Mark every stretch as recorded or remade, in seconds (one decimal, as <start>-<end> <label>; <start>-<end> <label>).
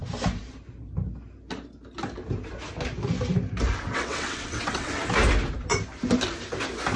0.0-3.9 recorded; 3.9-5.0 remade; 5.0-7.0 recorded